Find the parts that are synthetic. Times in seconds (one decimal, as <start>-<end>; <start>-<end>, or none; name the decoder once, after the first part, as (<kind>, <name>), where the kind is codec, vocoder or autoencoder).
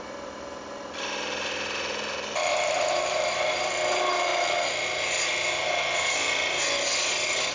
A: 2.5-3.7 (vocoder, BigVGAN v2)